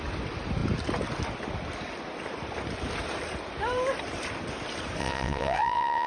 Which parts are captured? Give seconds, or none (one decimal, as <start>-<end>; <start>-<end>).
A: 0.0-5.0